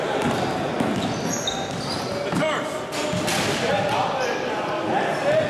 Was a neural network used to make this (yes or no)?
no